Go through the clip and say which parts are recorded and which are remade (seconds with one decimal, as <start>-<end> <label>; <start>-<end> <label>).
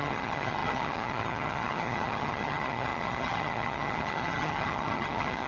0.0-5.5 remade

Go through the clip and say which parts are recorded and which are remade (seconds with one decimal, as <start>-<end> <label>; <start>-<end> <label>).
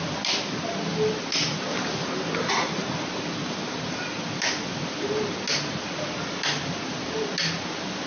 0.0-0.9 recorded; 0.9-5.2 remade; 5.2-8.1 recorded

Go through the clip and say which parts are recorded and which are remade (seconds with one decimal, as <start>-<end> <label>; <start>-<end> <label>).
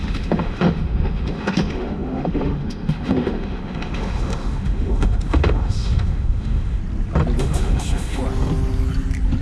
0.0-6.8 remade; 6.8-7.4 recorded; 7.4-8.2 remade; 8.2-9.4 recorded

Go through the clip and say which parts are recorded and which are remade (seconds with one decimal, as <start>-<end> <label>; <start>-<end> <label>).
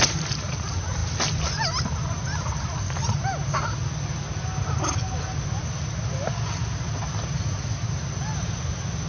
0.0-9.1 recorded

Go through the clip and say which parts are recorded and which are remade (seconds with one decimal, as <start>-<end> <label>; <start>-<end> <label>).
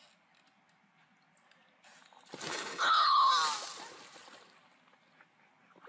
0.0-2.5 recorded; 2.5-3.3 remade; 3.3-5.9 recorded